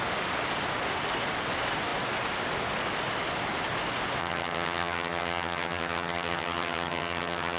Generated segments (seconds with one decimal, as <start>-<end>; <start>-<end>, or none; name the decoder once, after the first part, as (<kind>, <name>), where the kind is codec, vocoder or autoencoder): 4.2-7.6 (vocoder, HiFi-GAN)